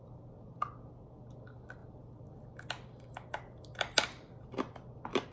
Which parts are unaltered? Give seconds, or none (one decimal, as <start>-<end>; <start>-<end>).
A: 0.0-5.3